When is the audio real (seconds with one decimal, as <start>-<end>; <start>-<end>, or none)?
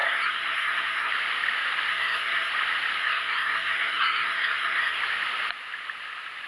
1.1-1.9; 2.5-3.0; 5.0-6.5